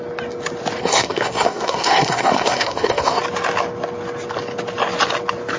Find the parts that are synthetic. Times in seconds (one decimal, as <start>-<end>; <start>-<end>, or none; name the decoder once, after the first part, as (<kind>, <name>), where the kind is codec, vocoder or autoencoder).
0.8-3.2 (codec, SNAC)